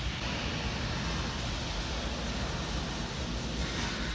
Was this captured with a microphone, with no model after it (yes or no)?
yes